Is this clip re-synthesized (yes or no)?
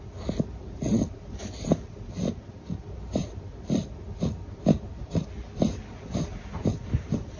no